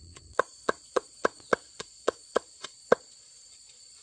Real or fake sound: fake